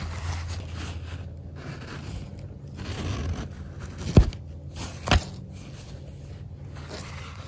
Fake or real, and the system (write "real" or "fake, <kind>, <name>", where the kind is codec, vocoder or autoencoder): real